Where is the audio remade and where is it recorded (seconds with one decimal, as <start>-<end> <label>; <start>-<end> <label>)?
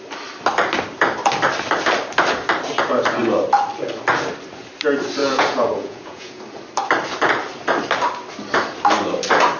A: 0.0-5.2 recorded; 5.2-6.4 remade; 6.4-9.6 recorded